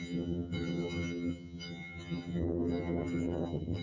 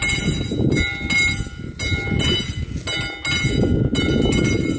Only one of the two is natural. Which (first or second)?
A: second